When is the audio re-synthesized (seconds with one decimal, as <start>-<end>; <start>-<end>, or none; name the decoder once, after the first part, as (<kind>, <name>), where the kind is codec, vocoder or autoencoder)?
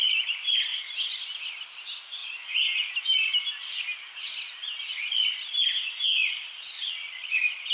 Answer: 0.7-1.2 (vocoder, Vocos); 6.2-7.7